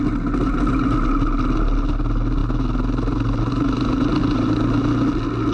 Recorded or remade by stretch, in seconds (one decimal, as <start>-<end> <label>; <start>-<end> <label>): 0.0-5.5 recorded